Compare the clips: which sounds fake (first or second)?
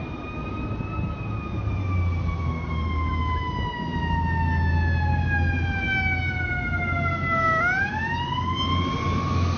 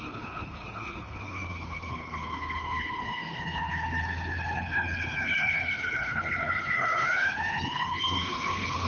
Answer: second